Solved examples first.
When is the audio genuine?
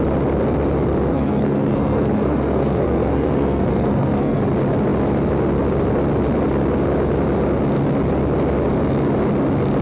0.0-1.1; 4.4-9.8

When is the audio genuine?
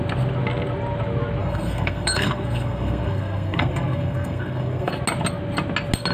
0.0-1.4; 4.9-6.1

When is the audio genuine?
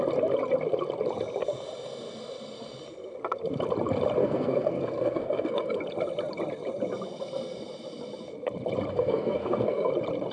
0.0-4.2; 5.8-8.9; 9.9-10.3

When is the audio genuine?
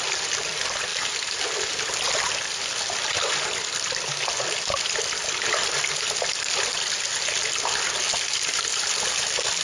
0.0-9.6